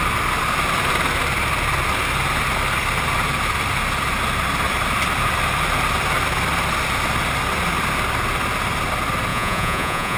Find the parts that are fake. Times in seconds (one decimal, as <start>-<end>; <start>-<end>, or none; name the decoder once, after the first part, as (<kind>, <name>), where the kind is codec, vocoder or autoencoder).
9.3-10.2 (vocoder, Vocos)